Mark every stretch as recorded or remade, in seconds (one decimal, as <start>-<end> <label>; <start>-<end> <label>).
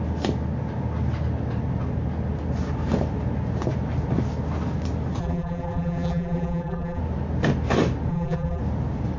0.0-5.2 recorded; 5.2-7.0 remade; 7.0-8.1 recorded; 8.1-8.6 remade; 8.6-9.2 recorded